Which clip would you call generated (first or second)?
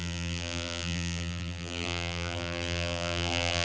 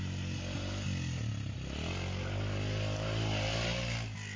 first